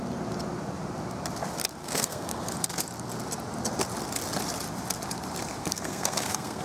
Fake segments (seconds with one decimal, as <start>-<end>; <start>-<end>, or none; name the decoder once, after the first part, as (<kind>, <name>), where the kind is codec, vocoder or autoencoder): 1.8-2.4 (codec, SNAC); 5.6-6.6